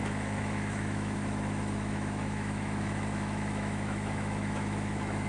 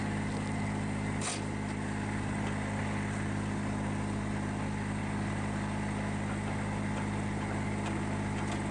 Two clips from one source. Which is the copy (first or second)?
first